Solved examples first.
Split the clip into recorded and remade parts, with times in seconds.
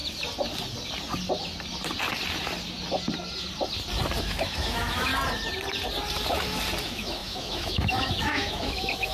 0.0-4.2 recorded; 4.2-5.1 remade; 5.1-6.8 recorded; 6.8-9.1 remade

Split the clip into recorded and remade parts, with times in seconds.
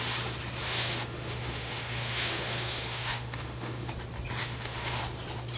0.0-0.6 recorded; 0.6-3.9 remade; 3.9-4.4 recorded; 4.4-5.0 remade; 5.0-5.6 recorded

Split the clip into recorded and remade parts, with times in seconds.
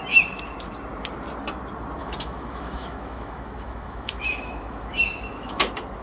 0.0-2.0 recorded; 2.0-5.6 remade; 5.6-6.0 recorded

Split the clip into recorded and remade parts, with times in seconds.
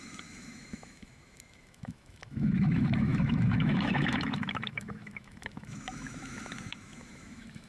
0.0-7.7 remade